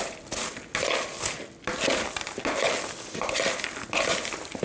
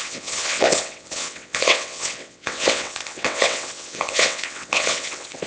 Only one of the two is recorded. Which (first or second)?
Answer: first